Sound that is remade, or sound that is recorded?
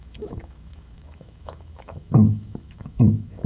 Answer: remade